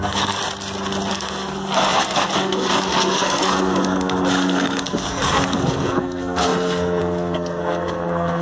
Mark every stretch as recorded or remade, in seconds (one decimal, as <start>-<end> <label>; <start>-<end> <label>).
0.0-0.4 remade; 0.4-1.1 recorded; 1.1-8.4 remade